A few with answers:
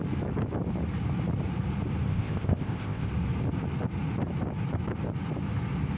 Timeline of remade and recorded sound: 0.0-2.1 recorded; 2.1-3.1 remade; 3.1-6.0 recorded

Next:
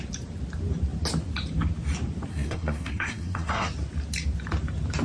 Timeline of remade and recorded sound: 0.0-2.3 recorded; 2.3-3.7 remade; 3.7-5.0 recorded

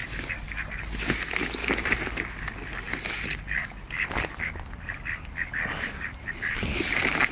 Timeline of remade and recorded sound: 0.0-1.6 recorded; 1.6-2.3 remade; 2.3-3.6 recorded; 3.6-6.1 remade; 6.1-7.3 recorded

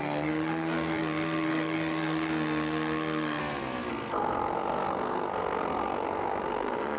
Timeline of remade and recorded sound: 0.0-3.4 remade; 3.4-3.9 recorded; 3.9-7.0 remade

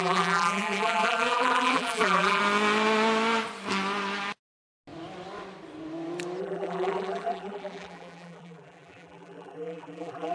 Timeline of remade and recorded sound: 0.0-2.4 remade; 2.4-6.4 recorded; 6.4-10.3 remade

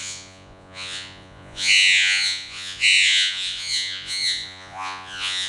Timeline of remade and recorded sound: 0.0-5.5 remade

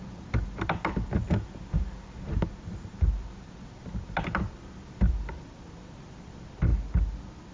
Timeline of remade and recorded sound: 0.0-6.7 remade; 6.7-7.5 recorded

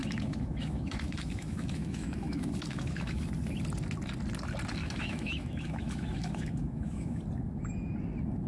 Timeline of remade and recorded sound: 0.0-3.3 remade; 3.3-4.8 recorded; 4.8-7.2 remade; 7.2-8.5 recorded